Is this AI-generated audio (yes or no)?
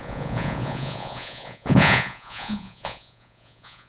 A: yes